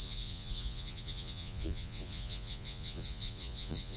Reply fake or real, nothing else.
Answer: fake